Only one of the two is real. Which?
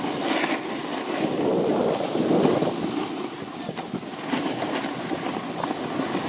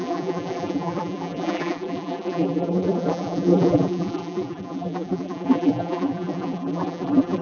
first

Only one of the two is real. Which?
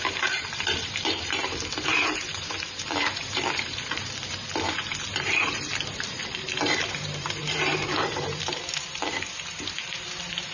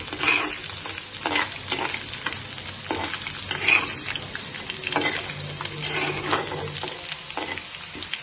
second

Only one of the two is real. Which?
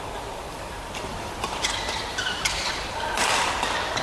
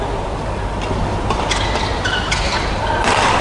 second